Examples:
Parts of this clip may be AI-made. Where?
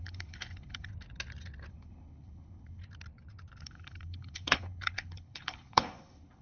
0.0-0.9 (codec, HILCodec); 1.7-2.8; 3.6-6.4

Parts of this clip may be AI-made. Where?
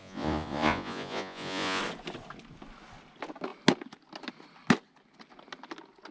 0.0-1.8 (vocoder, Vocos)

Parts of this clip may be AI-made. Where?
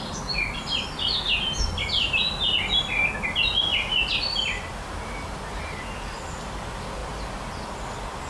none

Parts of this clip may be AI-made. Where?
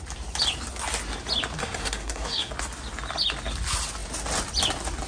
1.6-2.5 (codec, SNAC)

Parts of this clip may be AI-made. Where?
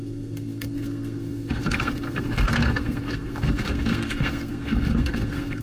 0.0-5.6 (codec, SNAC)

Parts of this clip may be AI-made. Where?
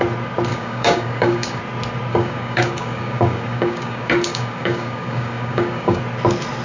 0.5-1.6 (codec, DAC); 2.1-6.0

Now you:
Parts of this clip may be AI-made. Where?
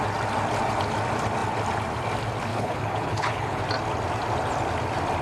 2.5-3.6 (codec, HILCodec)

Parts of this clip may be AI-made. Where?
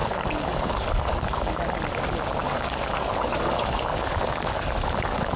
0.0-1.5 (codec, DAC); 2.4-5.4